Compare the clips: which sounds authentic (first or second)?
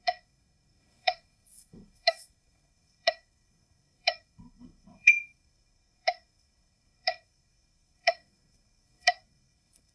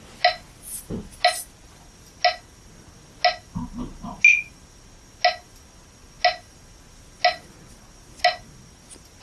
second